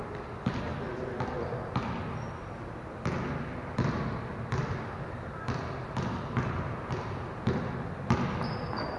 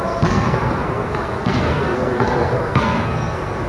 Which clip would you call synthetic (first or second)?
second